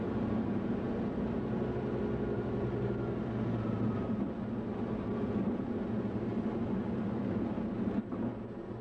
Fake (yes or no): no